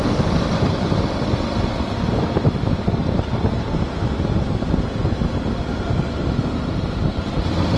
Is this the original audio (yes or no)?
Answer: yes